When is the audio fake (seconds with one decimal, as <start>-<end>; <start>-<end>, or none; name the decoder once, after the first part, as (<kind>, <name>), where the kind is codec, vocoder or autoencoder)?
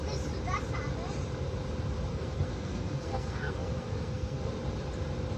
2.1-4.5 (codec, SNAC)